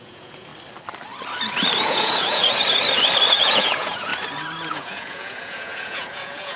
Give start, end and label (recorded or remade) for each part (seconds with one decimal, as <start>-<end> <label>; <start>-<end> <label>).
0.0-0.5 remade; 0.5-1.8 recorded; 1.8-2.4 remade; 2.4-3.4 recorded; 3.4-4.1 remade; 4.1-4.7 recorded; 4.7-6.6 remade